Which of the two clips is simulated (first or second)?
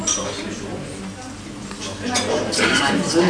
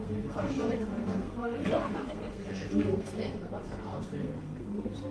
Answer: second